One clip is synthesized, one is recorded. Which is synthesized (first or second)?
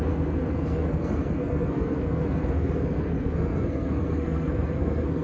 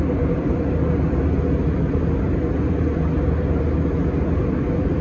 first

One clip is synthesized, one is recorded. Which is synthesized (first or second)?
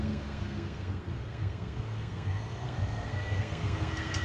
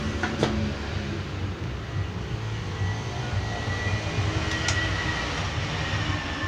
first